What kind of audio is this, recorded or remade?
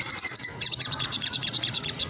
remade